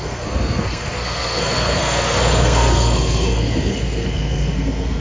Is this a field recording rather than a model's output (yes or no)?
no